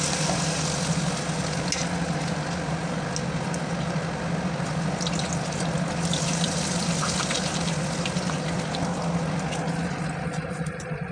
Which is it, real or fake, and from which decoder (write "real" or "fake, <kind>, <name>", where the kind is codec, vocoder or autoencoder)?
real